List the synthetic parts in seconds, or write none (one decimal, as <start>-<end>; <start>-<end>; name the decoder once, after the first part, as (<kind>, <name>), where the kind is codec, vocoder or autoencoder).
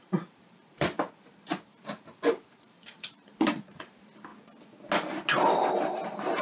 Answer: 0.0-4.3 (vocoder, BigVGAN v2); 5.7-6.4